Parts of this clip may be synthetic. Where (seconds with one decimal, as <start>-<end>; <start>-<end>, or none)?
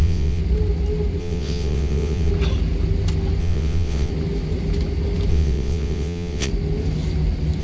0.0-0.4; 1.2-2.3; 3.4-4.1; 5.3-6.5